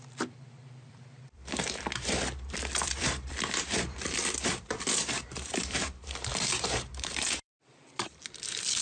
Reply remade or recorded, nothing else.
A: remade